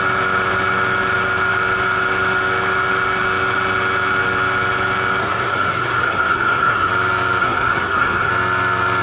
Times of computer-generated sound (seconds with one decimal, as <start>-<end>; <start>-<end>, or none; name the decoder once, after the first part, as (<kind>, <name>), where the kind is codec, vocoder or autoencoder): 5.2-6.9 (codec, SNAC); 7.4-8.3